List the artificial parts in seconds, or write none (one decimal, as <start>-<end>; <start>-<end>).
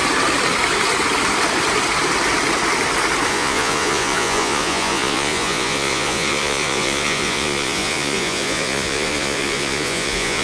3.3-10.4